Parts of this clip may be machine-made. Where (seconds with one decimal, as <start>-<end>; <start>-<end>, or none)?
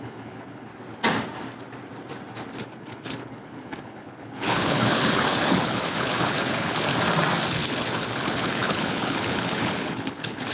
0.0-0.7; 2.6-6.9; 7.5-10.5